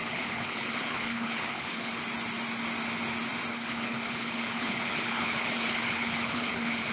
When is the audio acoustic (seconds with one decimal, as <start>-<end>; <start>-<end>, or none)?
2.0-3.5